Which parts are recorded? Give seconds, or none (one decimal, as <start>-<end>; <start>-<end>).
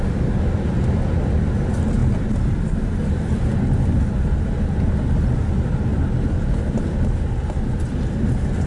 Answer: 0.0-8.7